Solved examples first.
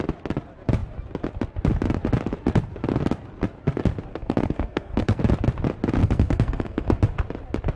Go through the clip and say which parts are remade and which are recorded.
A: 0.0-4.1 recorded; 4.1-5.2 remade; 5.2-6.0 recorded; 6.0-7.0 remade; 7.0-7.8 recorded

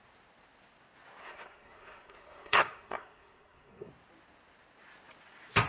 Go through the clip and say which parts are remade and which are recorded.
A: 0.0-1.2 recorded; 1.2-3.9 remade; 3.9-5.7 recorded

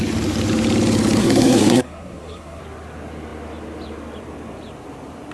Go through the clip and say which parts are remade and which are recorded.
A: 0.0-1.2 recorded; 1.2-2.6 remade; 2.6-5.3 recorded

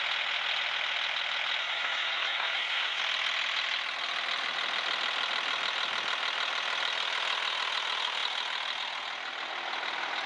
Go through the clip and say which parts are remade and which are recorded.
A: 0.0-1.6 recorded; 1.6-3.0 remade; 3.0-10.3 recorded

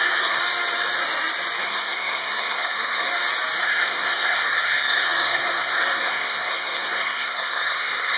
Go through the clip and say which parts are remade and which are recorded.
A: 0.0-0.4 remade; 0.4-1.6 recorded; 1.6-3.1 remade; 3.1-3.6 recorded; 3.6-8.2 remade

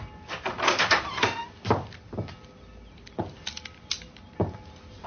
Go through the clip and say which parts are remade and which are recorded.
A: 0.0-5.1 recorded

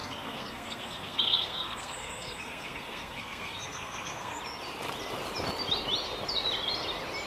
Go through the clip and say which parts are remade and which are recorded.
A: 0.0-4.4 remade; 4.4-7.3 recorded